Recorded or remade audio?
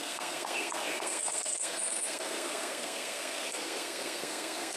remade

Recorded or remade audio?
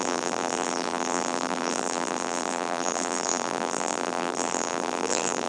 remade